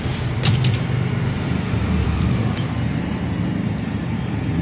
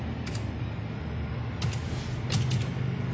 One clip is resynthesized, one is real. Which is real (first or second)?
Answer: second